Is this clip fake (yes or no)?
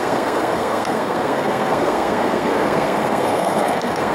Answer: yes